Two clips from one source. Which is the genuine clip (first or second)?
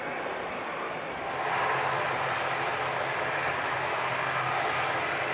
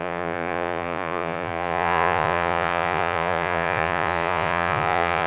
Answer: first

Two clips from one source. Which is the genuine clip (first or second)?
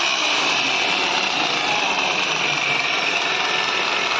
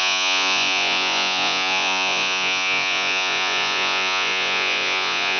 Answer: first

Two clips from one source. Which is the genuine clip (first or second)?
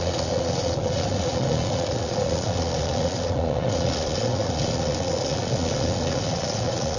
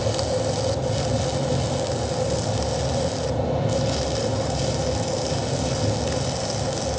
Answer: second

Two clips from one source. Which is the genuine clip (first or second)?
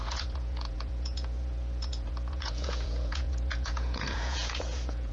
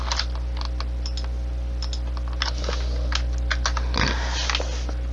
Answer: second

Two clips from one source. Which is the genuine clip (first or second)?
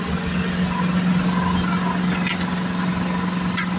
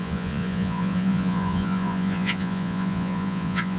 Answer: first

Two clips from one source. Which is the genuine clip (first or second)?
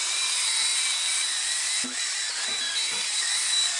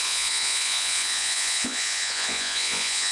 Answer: first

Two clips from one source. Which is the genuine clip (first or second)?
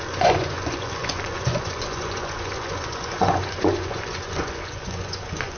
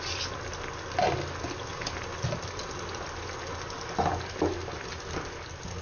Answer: second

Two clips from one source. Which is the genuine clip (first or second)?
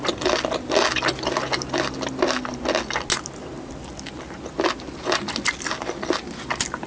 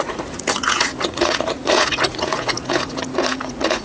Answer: first